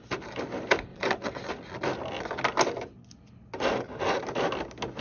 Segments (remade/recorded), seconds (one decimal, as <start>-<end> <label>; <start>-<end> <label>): 0.0-0.9 recorded; 0.9-1.5 remade; 1.5-5.0 recorded